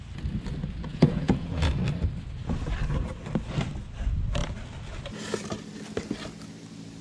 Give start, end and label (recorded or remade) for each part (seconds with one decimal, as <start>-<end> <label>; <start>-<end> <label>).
0.0-0.9 recorded; 0.9-1.6 remade; 1.6-7.0 recorded